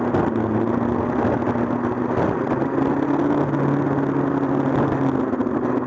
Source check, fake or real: real